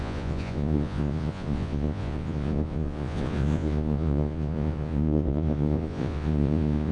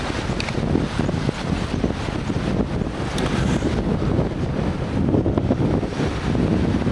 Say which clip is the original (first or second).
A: second